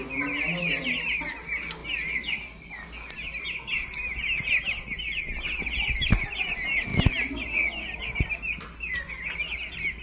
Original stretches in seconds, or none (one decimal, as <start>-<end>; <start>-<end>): 0.0-10.0